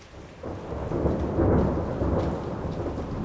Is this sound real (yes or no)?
yes